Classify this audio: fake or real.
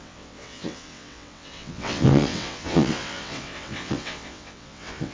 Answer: fake